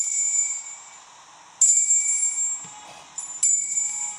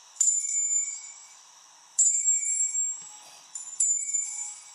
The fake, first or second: second